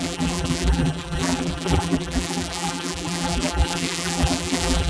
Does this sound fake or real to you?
fake